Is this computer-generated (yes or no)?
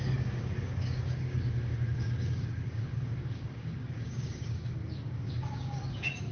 yes